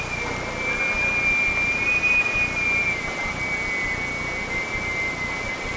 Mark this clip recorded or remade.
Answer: recorded